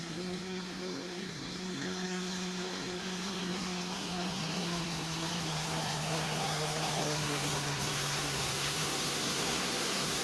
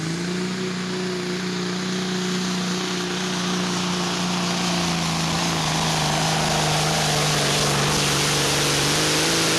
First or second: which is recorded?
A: second